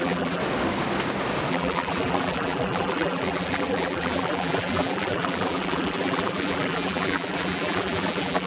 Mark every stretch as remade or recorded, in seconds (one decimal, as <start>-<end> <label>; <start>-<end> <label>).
0.0-0.4 remade; 0.4-1.5 recorded; 1.5-8.5 remade